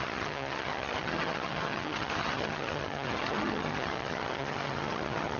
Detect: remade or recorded remade